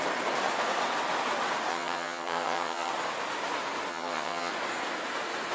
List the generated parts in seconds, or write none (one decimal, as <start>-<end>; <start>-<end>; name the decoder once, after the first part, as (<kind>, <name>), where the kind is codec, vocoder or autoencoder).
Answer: 1.7-2.9 (vocoder, HiFi-GAN); 3.9-4.5